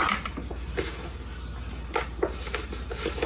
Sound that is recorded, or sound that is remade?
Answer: recorded